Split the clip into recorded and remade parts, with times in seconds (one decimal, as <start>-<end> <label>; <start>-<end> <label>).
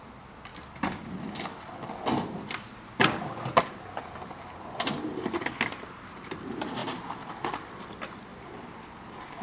0.0-9.4 recorded